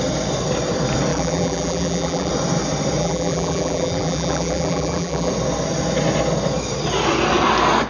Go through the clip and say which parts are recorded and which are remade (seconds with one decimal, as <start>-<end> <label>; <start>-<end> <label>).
0.0-1.1 recorded; 1.1-2.3 remade; 2.3-3.0 recorded; 3.0-5.3 remade; 5.3-7.9 recorded